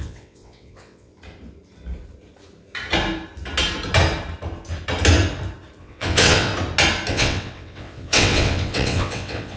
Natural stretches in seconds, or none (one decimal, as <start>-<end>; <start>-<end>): 1.1-5.8; 6.5-7.1